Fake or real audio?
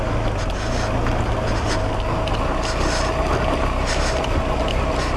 real